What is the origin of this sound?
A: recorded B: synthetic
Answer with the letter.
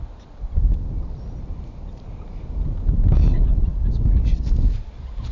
A